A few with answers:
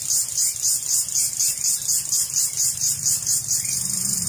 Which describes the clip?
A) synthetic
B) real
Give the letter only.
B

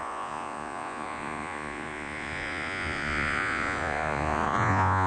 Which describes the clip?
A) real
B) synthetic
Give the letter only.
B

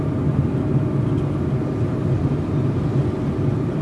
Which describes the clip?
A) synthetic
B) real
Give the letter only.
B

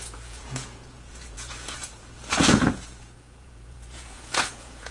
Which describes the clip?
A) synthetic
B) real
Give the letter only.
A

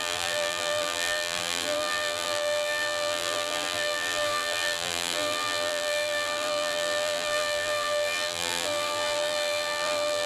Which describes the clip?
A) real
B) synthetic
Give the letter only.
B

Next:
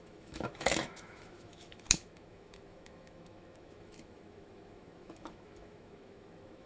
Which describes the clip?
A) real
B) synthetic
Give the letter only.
B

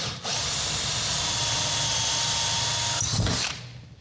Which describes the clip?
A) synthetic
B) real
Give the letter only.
B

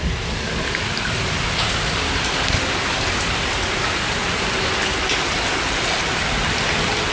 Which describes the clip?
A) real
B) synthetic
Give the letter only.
A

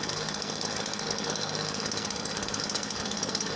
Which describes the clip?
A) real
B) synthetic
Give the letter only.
B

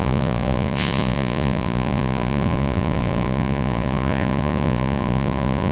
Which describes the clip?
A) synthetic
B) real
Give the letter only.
A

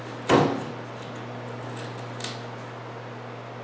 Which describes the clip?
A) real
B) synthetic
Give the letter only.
A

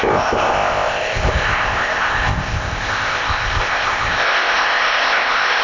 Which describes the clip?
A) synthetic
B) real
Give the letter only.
A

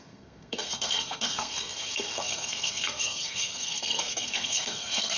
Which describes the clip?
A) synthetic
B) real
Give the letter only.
A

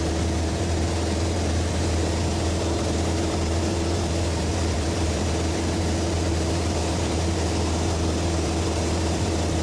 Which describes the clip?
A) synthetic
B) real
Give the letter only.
A